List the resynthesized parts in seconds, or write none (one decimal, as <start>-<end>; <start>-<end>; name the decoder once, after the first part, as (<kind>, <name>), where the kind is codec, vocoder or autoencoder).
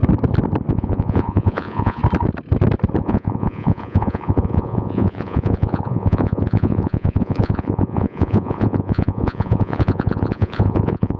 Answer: 0.7-2.0 (vocoder, Vocos); 3.0-11.2